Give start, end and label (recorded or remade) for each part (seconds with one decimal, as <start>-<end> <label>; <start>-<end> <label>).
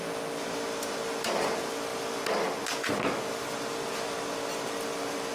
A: 0.0-5.3 recorded